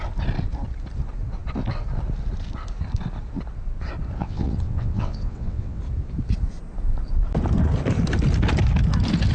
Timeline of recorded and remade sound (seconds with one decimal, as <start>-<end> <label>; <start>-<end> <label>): 0.0-4.2 recorded; 4.2-5.8 remade; 5.8-9.3 recorded